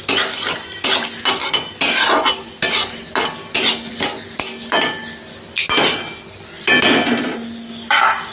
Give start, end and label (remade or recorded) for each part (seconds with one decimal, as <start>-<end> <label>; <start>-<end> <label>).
0.0-8.3 recorded